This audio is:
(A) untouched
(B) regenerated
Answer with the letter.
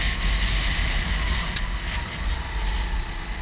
A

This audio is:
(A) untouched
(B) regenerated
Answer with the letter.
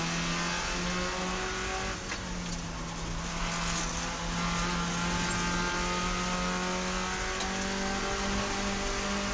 A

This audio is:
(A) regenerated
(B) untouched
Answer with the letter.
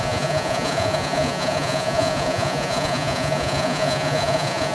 A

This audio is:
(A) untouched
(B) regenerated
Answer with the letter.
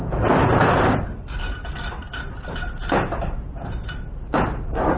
A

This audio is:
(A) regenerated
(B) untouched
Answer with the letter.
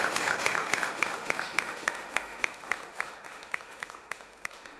A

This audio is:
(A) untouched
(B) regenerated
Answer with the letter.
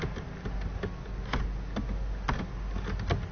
A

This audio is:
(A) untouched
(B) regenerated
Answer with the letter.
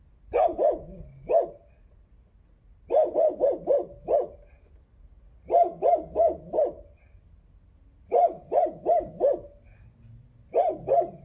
A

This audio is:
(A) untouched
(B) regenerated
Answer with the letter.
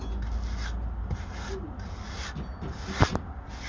A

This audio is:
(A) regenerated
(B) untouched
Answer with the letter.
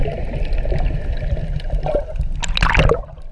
B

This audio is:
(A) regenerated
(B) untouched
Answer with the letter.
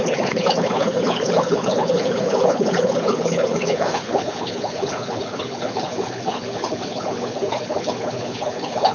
A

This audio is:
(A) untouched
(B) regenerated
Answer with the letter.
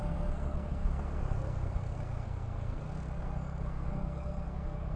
B